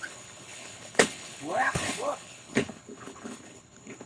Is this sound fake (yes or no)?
yes